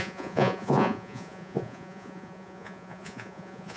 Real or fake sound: fake